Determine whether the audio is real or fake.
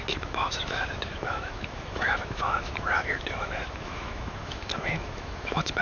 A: fake